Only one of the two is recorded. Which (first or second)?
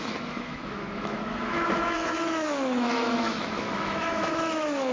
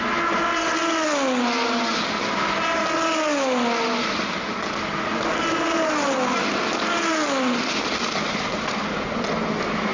second